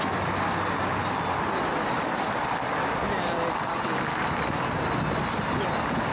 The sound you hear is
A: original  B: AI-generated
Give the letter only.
A